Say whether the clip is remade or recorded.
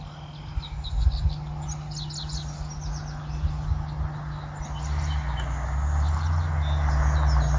recorded